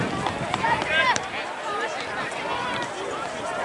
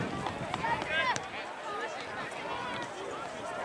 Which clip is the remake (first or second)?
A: first